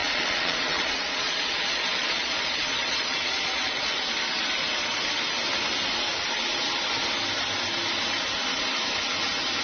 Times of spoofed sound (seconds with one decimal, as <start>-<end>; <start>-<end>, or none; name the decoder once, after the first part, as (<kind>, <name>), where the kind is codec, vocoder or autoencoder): 0.0-4.1 (vocoder, Vocos)